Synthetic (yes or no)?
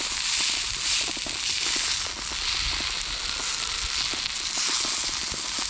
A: no